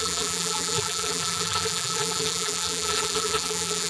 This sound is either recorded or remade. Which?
remade